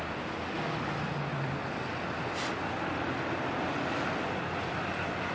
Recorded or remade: recorded